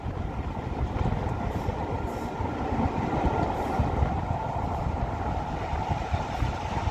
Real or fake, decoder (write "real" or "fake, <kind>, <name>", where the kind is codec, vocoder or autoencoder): real